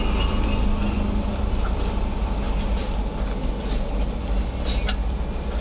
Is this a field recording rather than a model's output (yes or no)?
yes